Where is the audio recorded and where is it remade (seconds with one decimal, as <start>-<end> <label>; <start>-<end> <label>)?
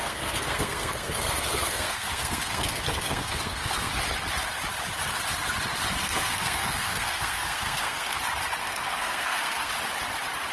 0.0-3.9 remade; 3.9-6.0 recorded; 6.0-8.2 remade; 8.2-8.6 recorded; 8.6-9.7 remade; 9.7-10.5 recorded